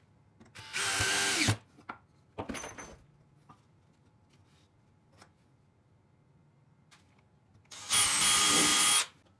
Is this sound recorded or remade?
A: recorded